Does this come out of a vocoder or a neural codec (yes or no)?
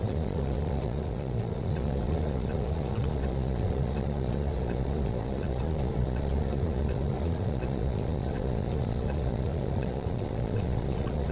yes